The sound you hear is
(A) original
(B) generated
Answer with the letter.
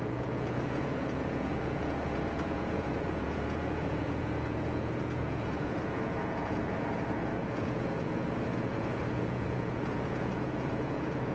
B